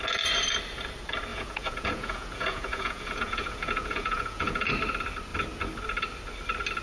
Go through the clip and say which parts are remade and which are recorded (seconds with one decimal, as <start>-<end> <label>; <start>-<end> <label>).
0.0-1.3 recorded; 1.3-4.7 remade; 4.7-6.8 recorded